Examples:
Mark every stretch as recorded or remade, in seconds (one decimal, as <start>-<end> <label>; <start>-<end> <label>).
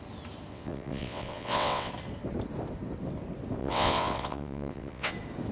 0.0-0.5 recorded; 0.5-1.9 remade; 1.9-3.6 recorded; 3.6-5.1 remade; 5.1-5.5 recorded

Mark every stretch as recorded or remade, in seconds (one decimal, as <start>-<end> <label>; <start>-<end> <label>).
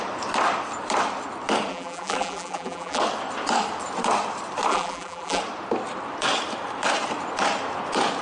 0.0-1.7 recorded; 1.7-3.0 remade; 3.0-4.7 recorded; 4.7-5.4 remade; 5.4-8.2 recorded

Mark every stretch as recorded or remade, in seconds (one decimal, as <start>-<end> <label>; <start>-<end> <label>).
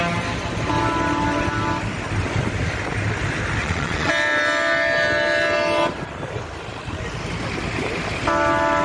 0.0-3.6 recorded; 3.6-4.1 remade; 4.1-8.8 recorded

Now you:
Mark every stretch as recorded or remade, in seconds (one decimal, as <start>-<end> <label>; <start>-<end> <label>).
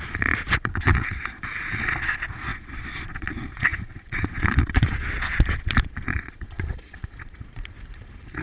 0.0-1.2 remade; 1.2-1.7 recorded; 1.7-8.4 remade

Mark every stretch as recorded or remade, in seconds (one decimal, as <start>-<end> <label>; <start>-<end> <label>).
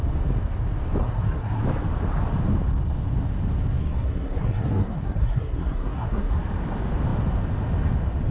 0.0-1.0 recorded; 1.0-1.6 remade; 1.6-3.8 recorded; 3.8-6.4 remade; 6.4-8.3 recorded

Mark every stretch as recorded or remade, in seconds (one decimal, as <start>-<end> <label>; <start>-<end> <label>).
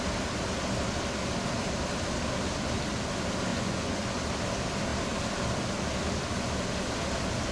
0.0-3.5 recorded; 3.5-4.2 remade; 4.2-7.5 recorded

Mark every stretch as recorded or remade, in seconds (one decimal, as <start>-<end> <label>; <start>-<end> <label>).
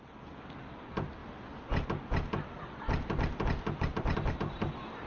0.0-5.1 recorded